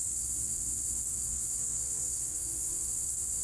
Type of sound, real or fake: fake